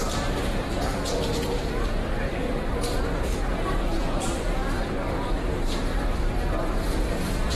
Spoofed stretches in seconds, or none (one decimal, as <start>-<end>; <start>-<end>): 1.1-7.6

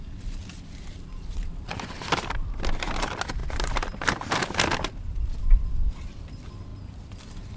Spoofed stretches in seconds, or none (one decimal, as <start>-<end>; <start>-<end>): 0.0-0.4; 1.3-6.7

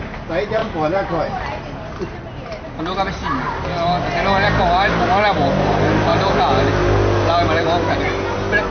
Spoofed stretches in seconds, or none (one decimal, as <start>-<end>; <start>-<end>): 6.1-6.7

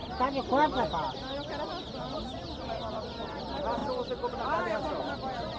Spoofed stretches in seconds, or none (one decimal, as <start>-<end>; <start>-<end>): 3.8-5.6

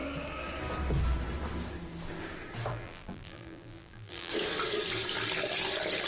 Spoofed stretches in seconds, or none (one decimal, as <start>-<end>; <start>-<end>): 2.7-4.3

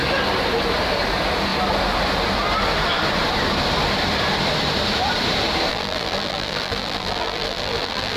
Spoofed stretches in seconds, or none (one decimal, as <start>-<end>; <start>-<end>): 5.7-8.2

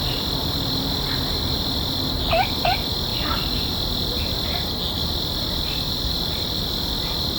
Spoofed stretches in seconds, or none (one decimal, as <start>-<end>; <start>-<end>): 0.4-2.7